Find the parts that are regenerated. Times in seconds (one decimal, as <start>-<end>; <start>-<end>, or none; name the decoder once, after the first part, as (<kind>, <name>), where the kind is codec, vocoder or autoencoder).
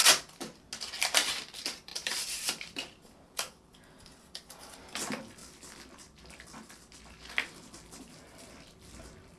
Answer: 1.0-5.4 (vocoder, BigVGAN v2); 8.0-9.4